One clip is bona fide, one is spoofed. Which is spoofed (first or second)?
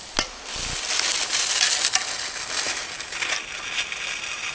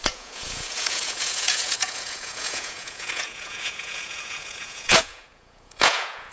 second